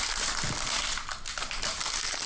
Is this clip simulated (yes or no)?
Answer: no